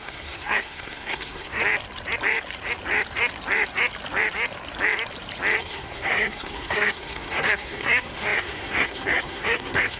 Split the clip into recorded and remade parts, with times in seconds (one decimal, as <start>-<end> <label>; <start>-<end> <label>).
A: 0.0-1.6 remade; 1.6-5.6 recorded; 5.6-10.0 remade